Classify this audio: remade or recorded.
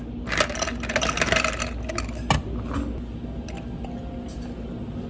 recorded